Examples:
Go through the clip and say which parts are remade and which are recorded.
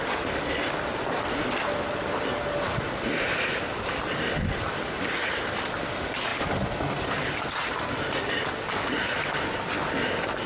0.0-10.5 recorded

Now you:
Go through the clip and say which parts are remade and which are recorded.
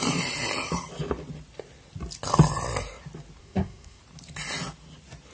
0.0-3.4 recorded; 3.4-4.0 remade; 4.0-5.3 recorded